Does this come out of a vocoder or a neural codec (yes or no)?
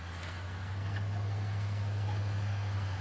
yes